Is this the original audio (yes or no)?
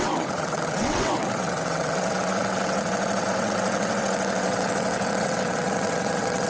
no